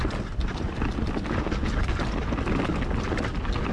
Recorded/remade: recorded